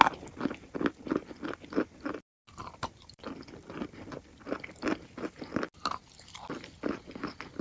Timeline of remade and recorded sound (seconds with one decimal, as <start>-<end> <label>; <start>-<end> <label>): 0.0-7.6 recorded